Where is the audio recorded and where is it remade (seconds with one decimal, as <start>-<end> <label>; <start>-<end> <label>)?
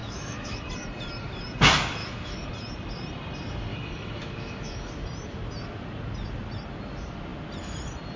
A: 0.0-0.7 remade; 0.7-2.0 recorded; 2.0-2.5 remade; 2.5-3.7 recorded; 3.7-4.9 remade; 4.9-8.2 recorded